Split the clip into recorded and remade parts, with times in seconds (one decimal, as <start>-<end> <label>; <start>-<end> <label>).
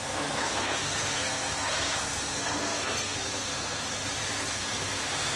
0.0-3.8 remade; 3.8-4.5 recorded; 4.5-5.4 remade